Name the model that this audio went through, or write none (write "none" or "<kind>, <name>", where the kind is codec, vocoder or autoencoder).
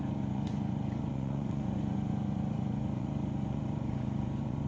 vocoder, Vocos